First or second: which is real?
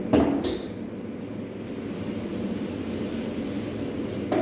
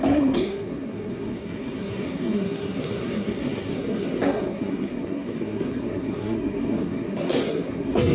first